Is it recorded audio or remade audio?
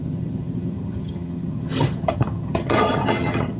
remade